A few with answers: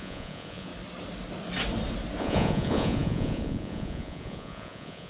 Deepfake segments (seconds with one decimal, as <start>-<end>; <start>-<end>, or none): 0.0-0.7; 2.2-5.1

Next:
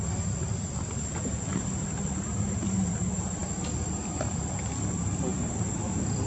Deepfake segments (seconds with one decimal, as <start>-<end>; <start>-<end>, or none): 3.4-4.0

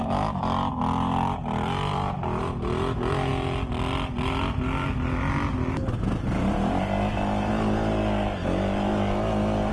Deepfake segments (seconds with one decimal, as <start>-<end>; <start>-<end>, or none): none